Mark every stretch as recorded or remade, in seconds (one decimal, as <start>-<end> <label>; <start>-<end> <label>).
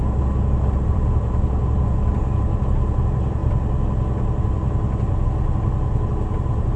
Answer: 0.0-6.8 recorded